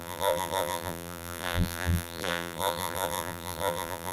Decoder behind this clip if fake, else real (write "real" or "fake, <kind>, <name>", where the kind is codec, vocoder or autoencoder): fake, vocoder, BigVGAN v2